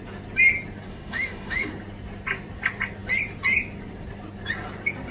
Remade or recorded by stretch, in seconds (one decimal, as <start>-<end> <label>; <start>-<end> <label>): 0.0-0.9 recorded; 0.9-1.7 remade; 1.7-5.1 recorded